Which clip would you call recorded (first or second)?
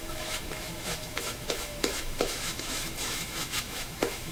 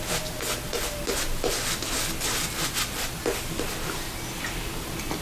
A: second